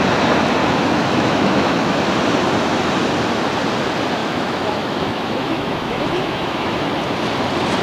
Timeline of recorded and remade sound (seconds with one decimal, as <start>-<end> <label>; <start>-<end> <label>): 0.0-0.6 recorded; 0.6-2.0 remade; 2.0-4.2 recorded; 4.2-6.9 remade; 6.9-7.8 recorded